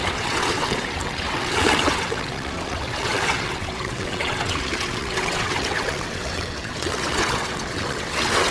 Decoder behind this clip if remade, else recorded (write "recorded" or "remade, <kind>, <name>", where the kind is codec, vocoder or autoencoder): remade, vocoder, WaveNeXt